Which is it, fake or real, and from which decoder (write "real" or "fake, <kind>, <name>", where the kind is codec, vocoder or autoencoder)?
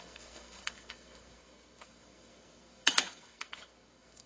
fake, codec, SNAC